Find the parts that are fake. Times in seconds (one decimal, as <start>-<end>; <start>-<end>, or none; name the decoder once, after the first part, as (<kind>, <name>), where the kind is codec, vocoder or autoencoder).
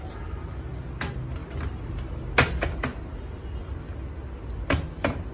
none